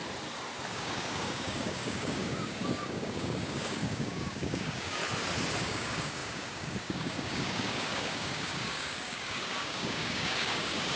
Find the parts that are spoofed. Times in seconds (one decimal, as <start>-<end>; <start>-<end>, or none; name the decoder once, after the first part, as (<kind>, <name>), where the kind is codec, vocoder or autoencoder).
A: 0.7-5.0 (codec, DAC); 5.6-11.0